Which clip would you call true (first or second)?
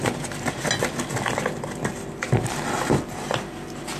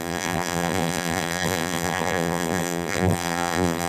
first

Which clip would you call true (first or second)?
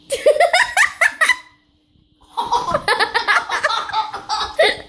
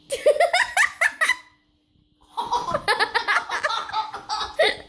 second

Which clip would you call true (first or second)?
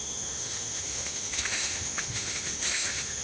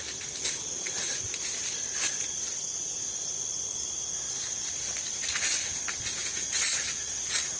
second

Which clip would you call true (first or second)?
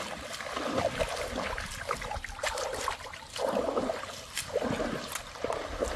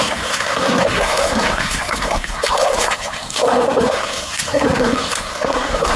first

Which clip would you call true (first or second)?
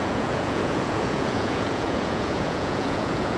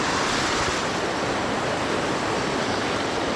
second